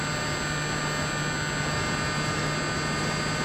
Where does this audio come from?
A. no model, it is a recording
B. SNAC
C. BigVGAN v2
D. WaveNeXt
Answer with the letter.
A